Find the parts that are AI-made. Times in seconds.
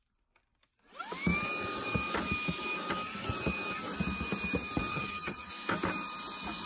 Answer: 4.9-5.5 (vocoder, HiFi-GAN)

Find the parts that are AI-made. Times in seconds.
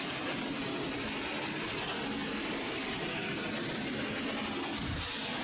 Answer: none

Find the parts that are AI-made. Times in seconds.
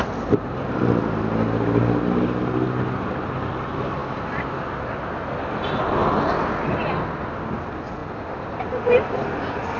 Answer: none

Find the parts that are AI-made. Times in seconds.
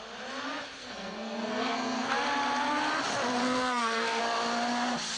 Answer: 0.8-2.1 (codec, SNAC); 3.4-4.2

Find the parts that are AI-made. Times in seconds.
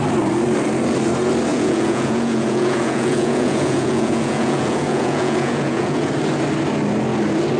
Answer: 1.5-6.1 (vocoder, Vocos)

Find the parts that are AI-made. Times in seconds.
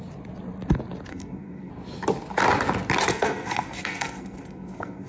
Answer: 1.1-1.7 (codec, SNAC); 3.1-5.1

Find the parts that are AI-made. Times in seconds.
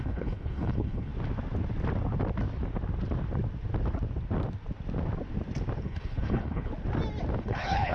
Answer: 0.0-1.1 (codec, HILCodec); 5.8-6.7; 7.4-7.9